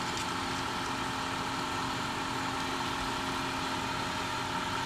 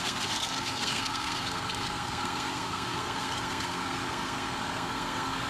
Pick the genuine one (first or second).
first